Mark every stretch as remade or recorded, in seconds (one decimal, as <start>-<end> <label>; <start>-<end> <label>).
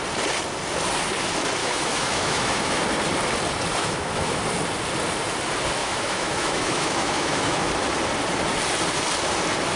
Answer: 0.0-1.6 recorded; 1.6-2.8 remade; 2.8-3.8 recorded; 3.8-4.4 remade; 4.4-5.8 recorded; 5.8-7.7 remade; 7.7-9.8 recorded